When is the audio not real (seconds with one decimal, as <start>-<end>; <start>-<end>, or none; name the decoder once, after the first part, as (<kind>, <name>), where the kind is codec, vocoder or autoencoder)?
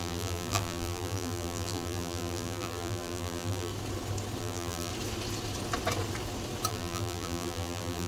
0.0-3.7 (vocoder, BigVGAN v2); 4.4-4.9; 6.7-8.1